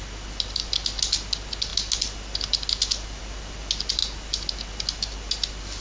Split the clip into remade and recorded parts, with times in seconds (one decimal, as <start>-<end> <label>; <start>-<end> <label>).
0.0-5.8 recorded